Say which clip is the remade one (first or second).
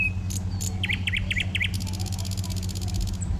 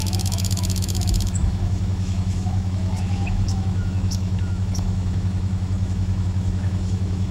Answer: second